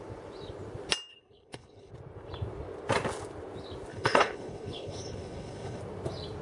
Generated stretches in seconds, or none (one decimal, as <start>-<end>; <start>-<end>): 1.1-1.9; 3.9-5.8

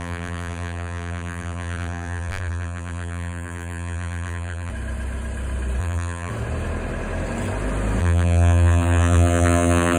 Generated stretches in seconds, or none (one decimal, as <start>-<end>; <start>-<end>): 0.0-4.7; 5.8-6.3; 8.0-10.0